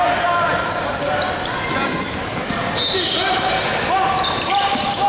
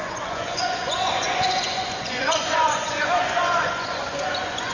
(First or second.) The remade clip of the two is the second